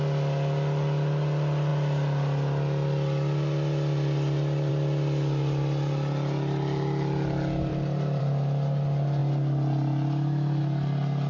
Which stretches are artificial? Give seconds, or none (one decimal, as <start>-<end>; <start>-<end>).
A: none